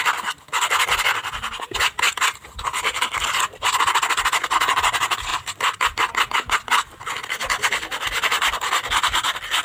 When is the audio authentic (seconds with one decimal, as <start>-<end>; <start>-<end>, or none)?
0.0-9.6